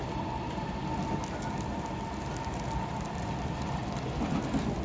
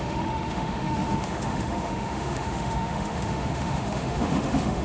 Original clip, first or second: first